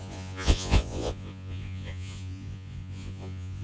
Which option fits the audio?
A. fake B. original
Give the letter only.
A